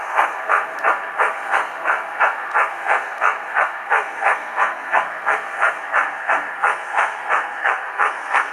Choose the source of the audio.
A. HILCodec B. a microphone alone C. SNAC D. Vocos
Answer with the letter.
C